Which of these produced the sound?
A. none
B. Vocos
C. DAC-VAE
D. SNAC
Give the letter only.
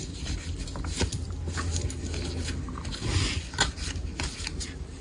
A